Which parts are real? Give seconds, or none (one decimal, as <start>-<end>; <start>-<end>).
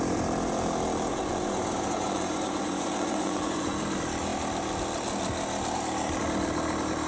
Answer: 0.0-1.1; 3.8-7.1